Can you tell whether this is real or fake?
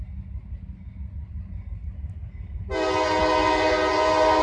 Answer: real